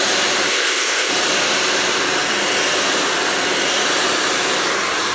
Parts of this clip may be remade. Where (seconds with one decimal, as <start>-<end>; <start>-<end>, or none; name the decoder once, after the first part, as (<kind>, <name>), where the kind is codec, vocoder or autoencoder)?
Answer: 0.5-1.1 (codec, ZipCodec)